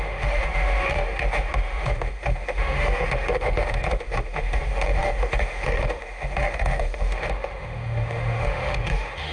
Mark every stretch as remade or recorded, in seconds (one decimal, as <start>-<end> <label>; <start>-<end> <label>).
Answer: 0.0-9.3 remade